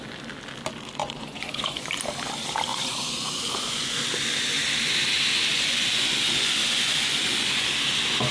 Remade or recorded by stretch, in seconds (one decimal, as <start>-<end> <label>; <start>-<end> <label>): 0.0-1.0 recorded; 1.0-1.9 remade; 1.9-2.7 recorded; 2.7-4.0 remade; 4.0-5.5 recorded; 5.5-7.7 remade; 7.7-8.3 recorded